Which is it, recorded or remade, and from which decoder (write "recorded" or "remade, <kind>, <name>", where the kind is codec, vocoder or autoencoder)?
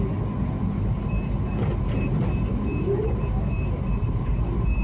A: remade, vocoder, BigVGAN v2